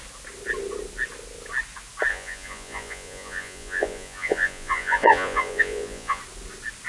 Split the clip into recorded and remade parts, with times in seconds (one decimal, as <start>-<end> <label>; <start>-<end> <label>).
0.0-2.1 recorded; 2.1-6.2 remade; 6.2-6.9 recorded